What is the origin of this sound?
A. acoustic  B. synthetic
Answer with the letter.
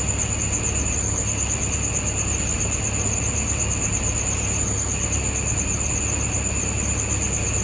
A